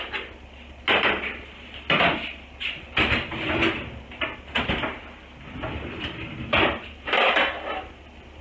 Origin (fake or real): real